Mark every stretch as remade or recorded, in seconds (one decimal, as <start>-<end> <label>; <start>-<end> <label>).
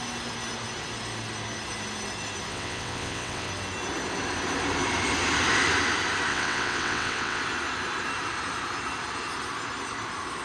0.0-2.5 recorded; 2.5-3.5 remade; 3.5-6.3 recorded; 6.3-7.4 remade; 7.4-10.4 recorded